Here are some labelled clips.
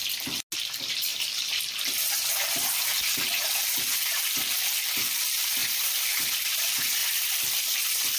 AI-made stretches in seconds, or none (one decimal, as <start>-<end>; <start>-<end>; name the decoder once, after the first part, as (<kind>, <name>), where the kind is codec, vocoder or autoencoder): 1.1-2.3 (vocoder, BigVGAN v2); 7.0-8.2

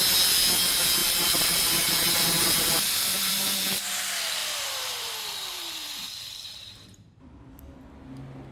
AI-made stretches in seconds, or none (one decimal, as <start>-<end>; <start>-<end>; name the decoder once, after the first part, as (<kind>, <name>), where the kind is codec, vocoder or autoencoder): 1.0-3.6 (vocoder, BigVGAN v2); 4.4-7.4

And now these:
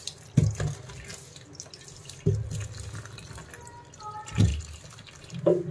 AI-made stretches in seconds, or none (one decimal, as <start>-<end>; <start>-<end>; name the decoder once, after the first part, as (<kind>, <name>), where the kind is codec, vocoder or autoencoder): 4.5-5.2 (vocoder, BigVGAN v2)